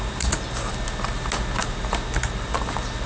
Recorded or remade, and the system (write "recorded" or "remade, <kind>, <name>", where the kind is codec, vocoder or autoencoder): recorded